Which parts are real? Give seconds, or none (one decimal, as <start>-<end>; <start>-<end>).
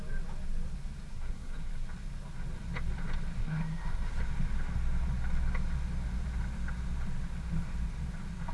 0.0-1.1; 1.7-3.4; 4.2-8.5